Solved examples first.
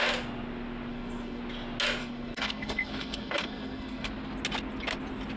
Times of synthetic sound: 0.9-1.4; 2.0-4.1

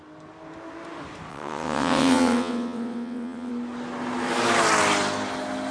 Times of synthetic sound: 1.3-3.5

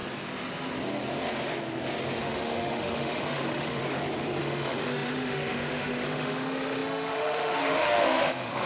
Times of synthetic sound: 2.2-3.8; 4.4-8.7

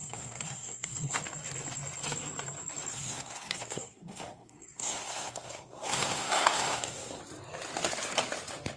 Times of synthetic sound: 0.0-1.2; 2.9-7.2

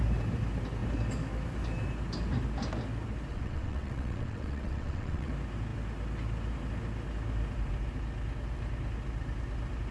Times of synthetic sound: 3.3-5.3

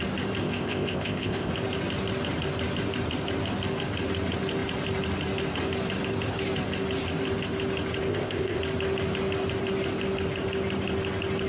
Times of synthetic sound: 0.4-1.5; 8.1-8.6